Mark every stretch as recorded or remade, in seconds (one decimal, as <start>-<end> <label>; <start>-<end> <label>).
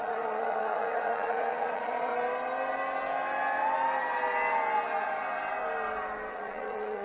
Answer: 0.0-2.1 remade; 2.1-6.3 recorded; 6.3-7.0 remade